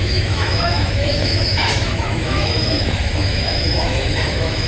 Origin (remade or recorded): remade